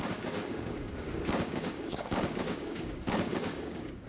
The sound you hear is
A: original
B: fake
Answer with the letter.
B